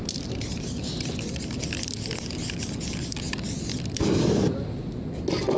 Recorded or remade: recorded